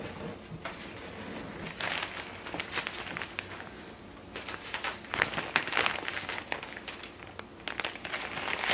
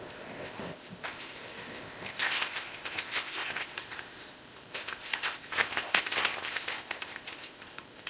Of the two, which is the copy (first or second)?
second